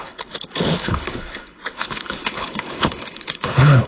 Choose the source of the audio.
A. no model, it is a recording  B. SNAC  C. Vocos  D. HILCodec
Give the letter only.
D